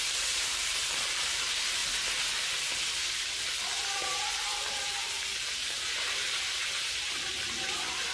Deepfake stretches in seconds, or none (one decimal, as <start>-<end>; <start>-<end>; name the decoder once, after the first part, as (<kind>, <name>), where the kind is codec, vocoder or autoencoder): 0.0-1.8 (vocoder, BigVGAN v2); 4.6-8.1